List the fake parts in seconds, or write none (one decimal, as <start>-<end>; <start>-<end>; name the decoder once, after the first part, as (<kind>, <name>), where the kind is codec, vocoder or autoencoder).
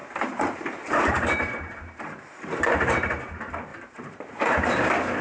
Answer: 0.0-3.1 (vocoder, BigVGAN v2); 3.7-4.7